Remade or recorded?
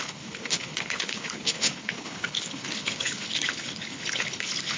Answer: remade